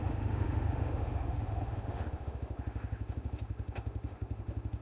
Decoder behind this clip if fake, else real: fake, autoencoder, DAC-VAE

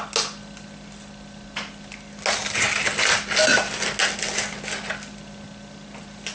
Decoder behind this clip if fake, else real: real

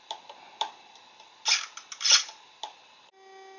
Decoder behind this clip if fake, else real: real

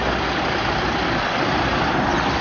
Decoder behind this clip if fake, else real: fake, vocoder, BigVGAN v2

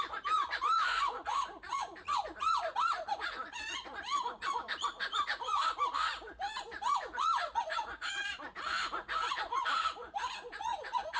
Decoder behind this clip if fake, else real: fake, vocoder, Vocos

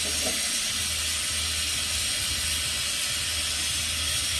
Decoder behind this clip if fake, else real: real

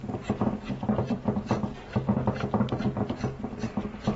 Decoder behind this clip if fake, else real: real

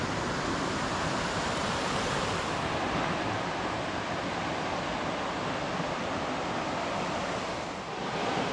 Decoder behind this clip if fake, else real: real